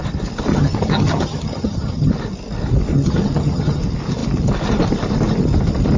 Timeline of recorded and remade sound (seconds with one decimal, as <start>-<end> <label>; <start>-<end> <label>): 0.0-0.5 recorded; 0.5-2.1 remade; 2.1-2.9 recorded; 2.9-3.8 remade; 3.8-6.0 recorded